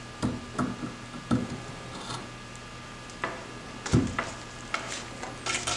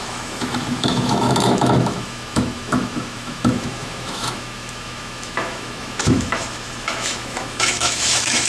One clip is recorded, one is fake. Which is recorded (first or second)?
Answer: first